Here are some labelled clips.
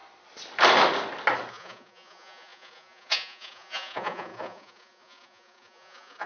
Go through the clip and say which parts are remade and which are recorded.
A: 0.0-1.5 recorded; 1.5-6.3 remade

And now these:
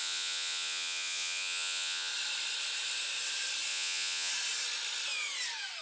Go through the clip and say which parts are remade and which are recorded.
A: 0.0-2.1 remade; 2.1-3.7 recorded; 3.7-4.3 remade; 4.3-5.8 recorded

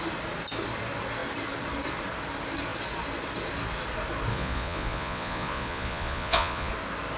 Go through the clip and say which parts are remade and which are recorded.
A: 0.0-4.3 recorded; 4.3-6.7 remade; 6.7-7.2 recorded

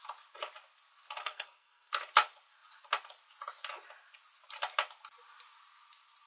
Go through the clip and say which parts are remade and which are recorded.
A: 0.0-1.2 recorded; 1.2-1.9 remade; 1.9-6.3 recorded